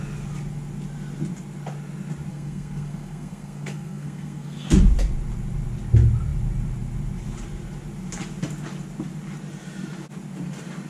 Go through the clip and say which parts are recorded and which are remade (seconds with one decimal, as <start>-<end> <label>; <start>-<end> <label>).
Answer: 0.0-2.3 recorded; 2.3-4.8 remade; 4.8-10.9 recorded